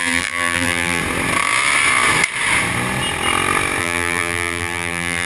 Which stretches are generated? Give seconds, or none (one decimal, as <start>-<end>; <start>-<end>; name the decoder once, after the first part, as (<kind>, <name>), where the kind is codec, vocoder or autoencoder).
0.0-1.0 (vocoder, BigVGAN v2); 3.8-5.2